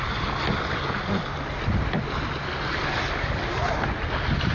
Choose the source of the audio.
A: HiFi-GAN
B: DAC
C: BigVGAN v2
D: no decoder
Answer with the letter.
D